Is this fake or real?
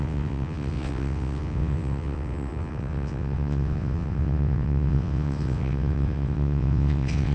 fake